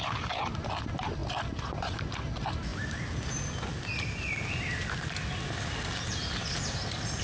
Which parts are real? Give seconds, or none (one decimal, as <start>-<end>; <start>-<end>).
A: 0.0-7.2